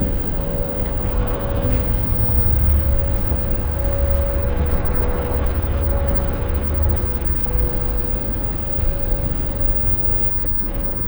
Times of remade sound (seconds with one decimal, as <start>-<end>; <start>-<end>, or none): 1.2-1.7; 4.4-7.7; 10.3-11.1